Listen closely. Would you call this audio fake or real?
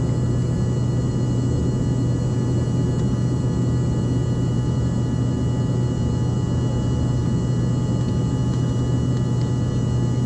real